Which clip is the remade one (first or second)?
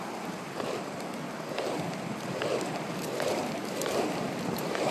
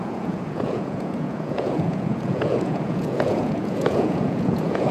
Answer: second